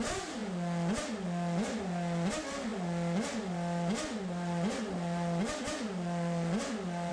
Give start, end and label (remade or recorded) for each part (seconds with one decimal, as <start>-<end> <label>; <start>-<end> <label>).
0.0-7.1 recorded